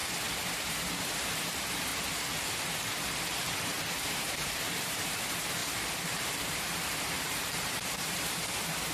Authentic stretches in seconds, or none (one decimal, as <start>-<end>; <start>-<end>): 0.0-0.5; 1.9-3.6

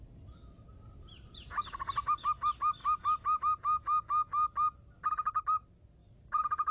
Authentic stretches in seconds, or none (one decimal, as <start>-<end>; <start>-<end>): 0.0-6.0

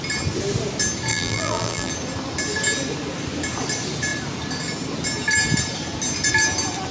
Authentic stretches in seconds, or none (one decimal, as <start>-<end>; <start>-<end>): 0.0-1.1; 1.9-6.9